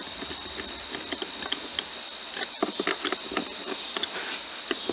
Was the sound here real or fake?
real